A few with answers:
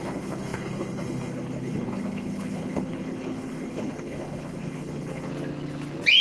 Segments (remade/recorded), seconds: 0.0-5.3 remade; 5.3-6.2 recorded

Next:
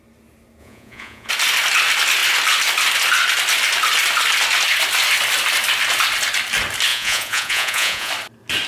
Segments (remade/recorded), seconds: 0.0-0.6 recorded; 0.6-1.3 remade; 1.3-6.9 recorded; 6.9-8.1 remade; 8.1-8.7 recorded